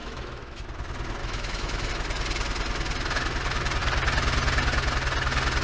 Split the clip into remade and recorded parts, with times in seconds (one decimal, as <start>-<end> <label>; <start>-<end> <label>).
0.0-0.6 remade; 0.6-1.2 recorded; 1.2-1.9 remade; 1.9-5.6 recorded